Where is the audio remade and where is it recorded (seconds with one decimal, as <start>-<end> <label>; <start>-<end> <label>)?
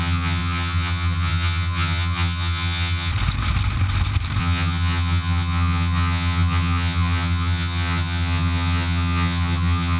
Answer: 0.0-3.1 remade; 3.1-4.4 recorded; 4.4-10.0 remade